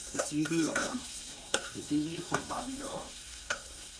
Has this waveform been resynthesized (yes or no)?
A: yes